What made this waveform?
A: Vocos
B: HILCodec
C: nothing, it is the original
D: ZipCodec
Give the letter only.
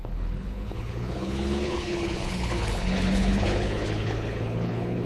B